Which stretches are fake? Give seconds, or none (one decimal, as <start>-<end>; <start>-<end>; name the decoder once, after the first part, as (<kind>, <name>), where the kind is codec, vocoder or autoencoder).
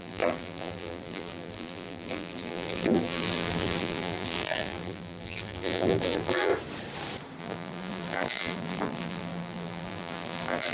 0.0-6.5 (vocoder, BigVGAN v2); 7.4-10.7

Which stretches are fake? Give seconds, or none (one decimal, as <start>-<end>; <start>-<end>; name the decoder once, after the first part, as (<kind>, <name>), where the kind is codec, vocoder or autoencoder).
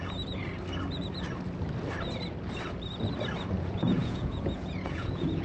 0.0-0.4 (vocoder, Vocos); 3.6-5.4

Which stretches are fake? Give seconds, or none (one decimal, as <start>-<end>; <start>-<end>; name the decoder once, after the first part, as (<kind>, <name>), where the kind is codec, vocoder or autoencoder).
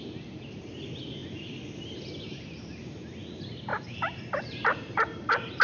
1.2-2.0 (vocoder, BigVGAN v2); 3.7-5.6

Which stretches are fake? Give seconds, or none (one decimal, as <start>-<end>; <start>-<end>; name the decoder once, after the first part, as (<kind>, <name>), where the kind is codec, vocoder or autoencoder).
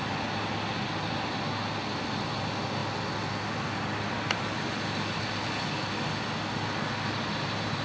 none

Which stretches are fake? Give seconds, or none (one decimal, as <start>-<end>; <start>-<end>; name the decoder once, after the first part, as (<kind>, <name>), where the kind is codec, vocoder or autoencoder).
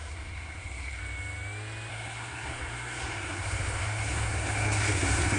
0.0-1.0 (codec, SNAC); 1.9-5.4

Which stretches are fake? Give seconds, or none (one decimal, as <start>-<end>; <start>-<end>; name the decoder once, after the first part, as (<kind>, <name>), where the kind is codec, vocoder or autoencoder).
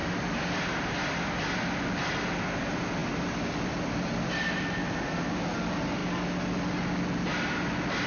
none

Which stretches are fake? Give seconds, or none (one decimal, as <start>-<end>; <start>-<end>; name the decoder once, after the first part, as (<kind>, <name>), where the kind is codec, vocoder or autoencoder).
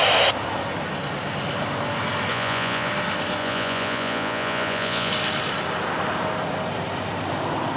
2.3-2.9 (vocoder, Vocos); 3.4-5.1